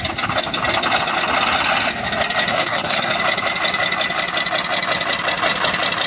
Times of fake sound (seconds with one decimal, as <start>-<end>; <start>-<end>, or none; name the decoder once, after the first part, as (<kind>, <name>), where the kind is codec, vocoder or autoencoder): 2.5-3.1 (codec, SNAC)